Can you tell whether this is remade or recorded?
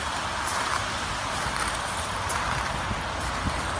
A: recorded